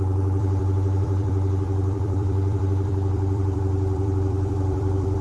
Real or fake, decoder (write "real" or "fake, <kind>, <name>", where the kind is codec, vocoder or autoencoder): fake, vocoder, BigVGAN v2